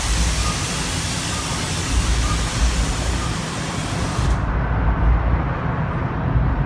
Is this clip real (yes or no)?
yes